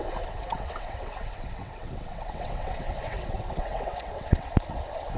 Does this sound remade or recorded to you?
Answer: remade